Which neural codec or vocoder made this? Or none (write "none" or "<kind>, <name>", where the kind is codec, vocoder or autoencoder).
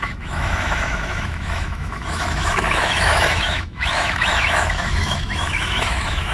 autoencoder, DAC-VAE